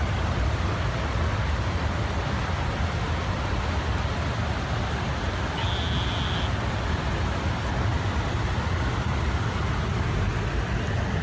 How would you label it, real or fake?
real